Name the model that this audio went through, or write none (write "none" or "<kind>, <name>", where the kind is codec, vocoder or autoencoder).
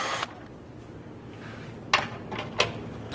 none